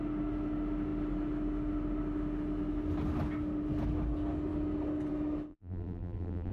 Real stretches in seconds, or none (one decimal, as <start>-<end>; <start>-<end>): 0.0-5.5